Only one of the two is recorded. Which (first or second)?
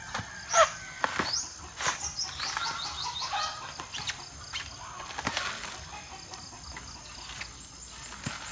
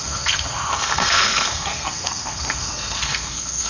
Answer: first